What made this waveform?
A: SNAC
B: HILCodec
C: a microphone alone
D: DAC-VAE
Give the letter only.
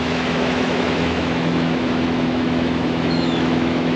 D